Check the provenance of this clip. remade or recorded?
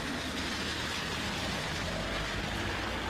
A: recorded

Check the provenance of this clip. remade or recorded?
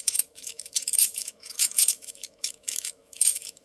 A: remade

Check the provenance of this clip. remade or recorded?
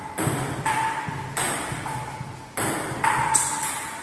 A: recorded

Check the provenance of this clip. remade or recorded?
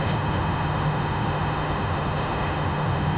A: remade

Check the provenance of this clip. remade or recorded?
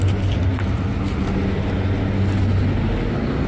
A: recorded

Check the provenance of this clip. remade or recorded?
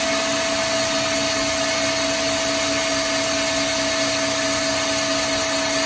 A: recorded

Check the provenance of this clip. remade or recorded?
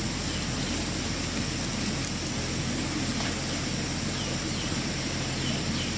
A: recorded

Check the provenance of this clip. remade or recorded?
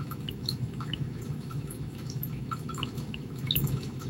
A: remade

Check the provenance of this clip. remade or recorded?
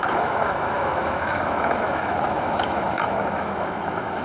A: remade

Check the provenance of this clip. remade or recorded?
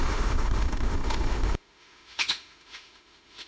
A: remade